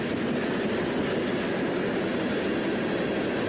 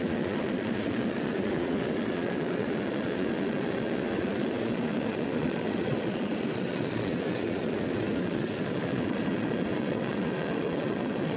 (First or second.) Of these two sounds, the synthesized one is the second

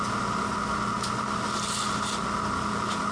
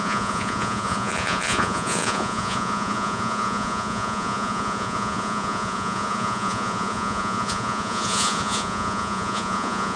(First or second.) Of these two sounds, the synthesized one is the second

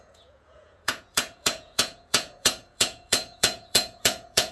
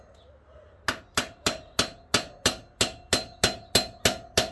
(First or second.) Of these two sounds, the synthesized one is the first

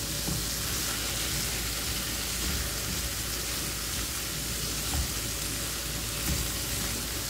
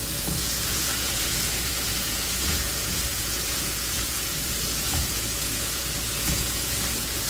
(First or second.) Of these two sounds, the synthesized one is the second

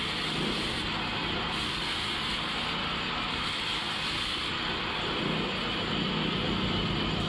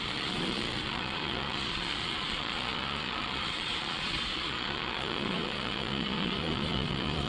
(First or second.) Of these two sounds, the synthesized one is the second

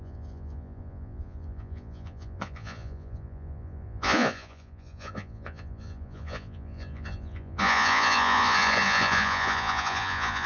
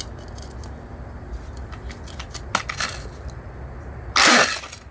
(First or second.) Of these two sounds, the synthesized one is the first